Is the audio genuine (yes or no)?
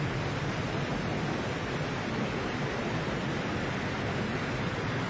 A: yes